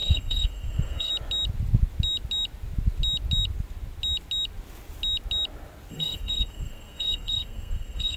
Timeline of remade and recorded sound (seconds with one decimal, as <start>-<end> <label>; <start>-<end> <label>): 0.0-1.1 remade; 1.1-5.9 recorded; 5.9-8.2 remade